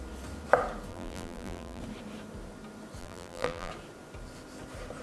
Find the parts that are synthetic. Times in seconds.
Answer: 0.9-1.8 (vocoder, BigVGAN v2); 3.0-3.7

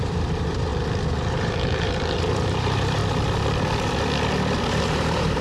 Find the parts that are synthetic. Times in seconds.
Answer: 0.0-0.7 (vocoder, BigVGAN v2); 1.3-3.0; 4.7-5.4

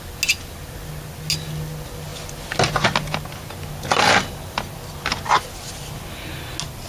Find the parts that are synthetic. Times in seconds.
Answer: none